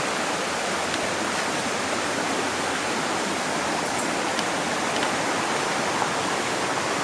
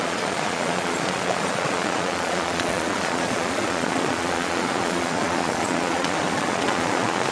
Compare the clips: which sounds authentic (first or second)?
first